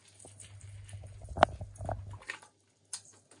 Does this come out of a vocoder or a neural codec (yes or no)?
no